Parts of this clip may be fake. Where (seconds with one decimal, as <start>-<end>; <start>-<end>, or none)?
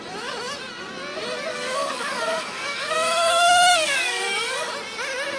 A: 1.5-4.7